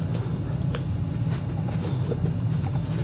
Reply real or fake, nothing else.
real